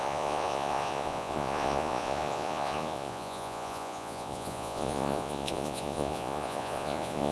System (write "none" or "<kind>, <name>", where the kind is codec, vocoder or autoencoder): vocoder, Vocos